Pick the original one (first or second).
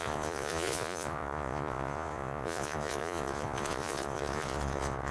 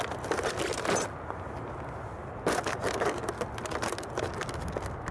second